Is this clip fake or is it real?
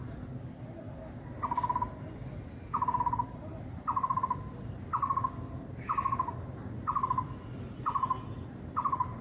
real